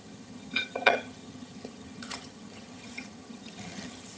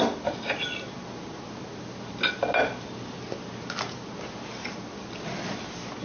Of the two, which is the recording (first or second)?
second